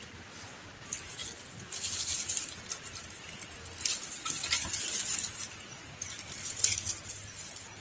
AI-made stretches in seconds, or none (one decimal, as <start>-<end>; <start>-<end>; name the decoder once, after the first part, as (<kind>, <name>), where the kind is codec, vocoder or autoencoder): 0.0-1.2 (vocoder, BigVGAN v2); 3.0-5.8

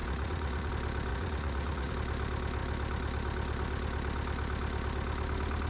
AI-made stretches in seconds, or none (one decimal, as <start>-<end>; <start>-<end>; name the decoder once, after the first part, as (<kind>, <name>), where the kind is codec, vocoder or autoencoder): 0.0-0.7 (vocoder, Vocos); 1.1-1.9

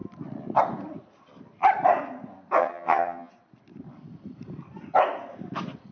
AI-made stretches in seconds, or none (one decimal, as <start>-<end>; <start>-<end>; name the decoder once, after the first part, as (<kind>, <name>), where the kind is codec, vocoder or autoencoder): 2.6-3.3 (vocoder, HiFi-GAN)

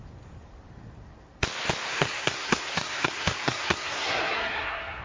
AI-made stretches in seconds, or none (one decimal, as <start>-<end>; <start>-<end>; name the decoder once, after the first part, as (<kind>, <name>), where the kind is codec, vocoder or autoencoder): 1.9-5.0 (codec, SNAC)

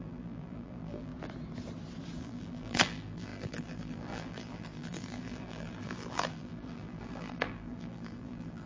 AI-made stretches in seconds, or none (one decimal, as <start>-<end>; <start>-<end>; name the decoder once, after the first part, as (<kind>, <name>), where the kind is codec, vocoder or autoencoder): 0.0-1.1 (vocoder, BigVGAN v2); 2.2-8.7

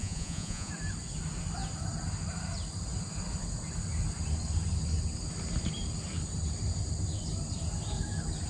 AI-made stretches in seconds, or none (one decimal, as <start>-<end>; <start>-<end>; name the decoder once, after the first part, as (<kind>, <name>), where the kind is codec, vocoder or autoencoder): 0.0-0.7 (vocoder, Vocos)